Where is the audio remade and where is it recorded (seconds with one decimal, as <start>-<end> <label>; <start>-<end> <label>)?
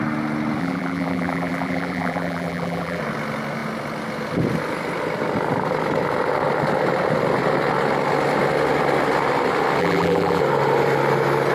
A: 0.0-0.6 recorded; 0.6-3.0 remade; 3.0-9.8 recorded; 9.8-10.4 remade; 10.4-11.5 recorded